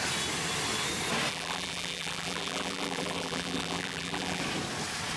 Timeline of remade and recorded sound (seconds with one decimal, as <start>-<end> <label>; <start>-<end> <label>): 0.0-1.3 recorded; 1.3-4.4 remade; 4.4-5.2 recorded